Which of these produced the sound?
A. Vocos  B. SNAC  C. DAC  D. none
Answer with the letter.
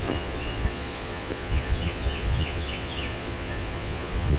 A